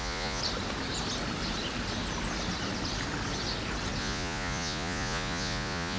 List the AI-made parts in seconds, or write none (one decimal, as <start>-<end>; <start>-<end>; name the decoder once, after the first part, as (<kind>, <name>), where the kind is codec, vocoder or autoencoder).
0.0-0.4 (vocoder, Vocos); 4.0-6.0